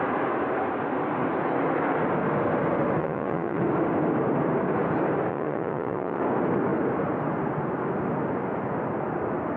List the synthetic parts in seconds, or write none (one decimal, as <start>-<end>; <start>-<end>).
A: 3.0-3.6; 5.3-6.2